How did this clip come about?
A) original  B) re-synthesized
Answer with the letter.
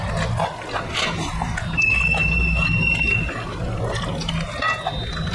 A